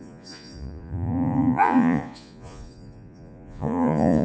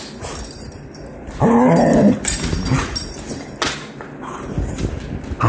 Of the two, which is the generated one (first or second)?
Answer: first